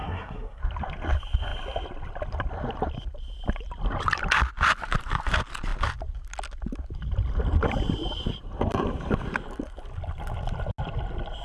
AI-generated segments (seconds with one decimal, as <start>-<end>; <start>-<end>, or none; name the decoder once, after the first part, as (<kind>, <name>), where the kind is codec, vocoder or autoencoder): 0.0-0.6 (codec, SNAC)